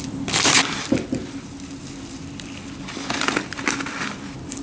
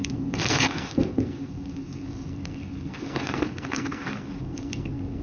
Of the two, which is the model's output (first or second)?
second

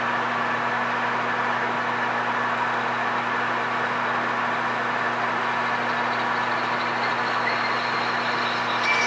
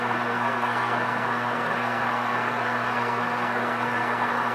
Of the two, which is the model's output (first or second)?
second